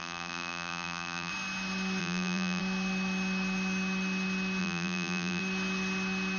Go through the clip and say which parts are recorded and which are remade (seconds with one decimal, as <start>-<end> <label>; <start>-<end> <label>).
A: 0.0-1.3 remade; 1.3-2.0 recorded; 2.0-2.6 remade; 2.6-4.6 recorded; 4.6-5.4 remade; 5.4-6.4 recorded